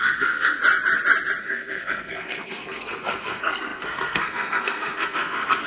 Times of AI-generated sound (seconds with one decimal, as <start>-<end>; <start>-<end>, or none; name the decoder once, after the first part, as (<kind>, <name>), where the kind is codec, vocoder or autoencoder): 0.0-0.6 (codec, SNAC); 1.4-5.7